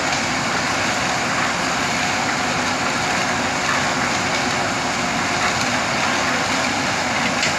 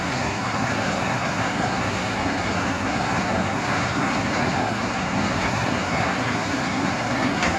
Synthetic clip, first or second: second